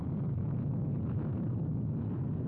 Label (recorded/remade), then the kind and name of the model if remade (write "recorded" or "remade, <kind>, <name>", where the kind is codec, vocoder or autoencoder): recorded